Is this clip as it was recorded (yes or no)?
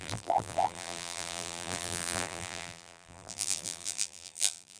no